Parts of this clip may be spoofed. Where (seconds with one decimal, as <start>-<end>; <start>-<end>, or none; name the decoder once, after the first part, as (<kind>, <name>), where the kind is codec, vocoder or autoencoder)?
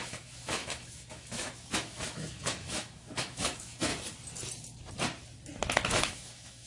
0.0-3.9 (autoencoder, DAC-VAE); 5.9-6.7